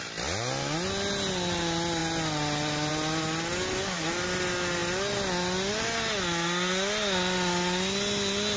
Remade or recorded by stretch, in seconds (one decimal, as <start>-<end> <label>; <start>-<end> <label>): 0.0-8.6 recorded